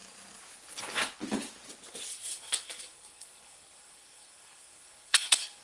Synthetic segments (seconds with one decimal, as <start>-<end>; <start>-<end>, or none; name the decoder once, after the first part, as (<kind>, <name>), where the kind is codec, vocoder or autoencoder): 2.1-5.6 (codec, SNAC)